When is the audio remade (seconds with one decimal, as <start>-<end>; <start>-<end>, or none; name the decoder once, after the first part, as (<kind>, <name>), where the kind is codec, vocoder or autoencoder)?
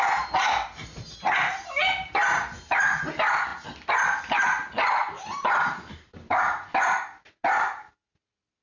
none